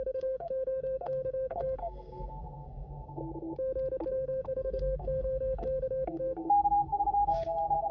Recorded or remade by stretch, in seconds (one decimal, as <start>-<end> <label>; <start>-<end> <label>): 0.0-3.2 remade; 3.2-4.1 recorded; 4.1-7.9 remade